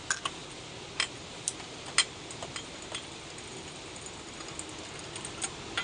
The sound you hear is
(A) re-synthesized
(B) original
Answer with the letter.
B